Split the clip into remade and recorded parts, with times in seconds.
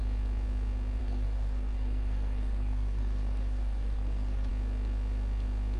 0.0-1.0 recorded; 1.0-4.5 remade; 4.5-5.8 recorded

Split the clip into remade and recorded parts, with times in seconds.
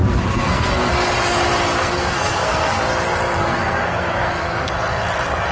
0.0-0.9 remade; 0.9-1.8 recorded; 1.8-2.8 remade; 2.8-3.4 recorded; 3.4-4.7 remade; 4.7-5.5 recorded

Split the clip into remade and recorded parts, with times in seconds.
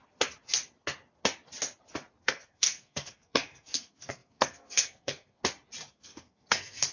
0.0-2.2 recorded; 2.2-5.4 remade; 5.4-5.9 recorded; 5.9-6.9 remade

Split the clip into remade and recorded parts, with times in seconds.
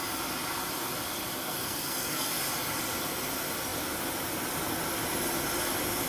0.0-1.4 recorded; 1.4-2.4 remade; 2.4-6.1 recorded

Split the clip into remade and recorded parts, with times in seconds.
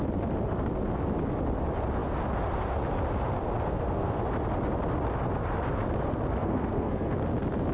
0.0-3.7 recorded; 3.7-4.2 remade; 4.2-6.4 recorded; 6.4-7.1 remade; 7.1-7.7 recorded